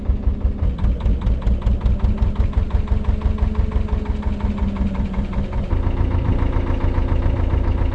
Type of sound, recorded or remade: recorded